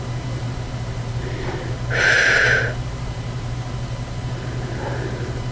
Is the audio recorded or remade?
remade